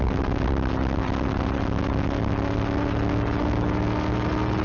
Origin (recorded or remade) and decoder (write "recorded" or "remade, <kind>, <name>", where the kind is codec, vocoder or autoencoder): recorded